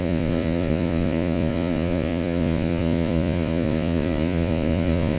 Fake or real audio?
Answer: fake